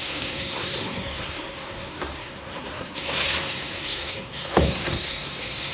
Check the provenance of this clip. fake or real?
fake